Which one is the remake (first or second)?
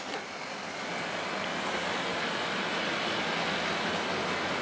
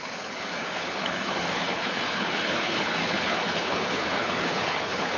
second